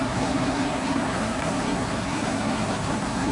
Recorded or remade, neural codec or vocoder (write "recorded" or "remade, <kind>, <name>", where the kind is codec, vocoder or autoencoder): remade, codec, SNAC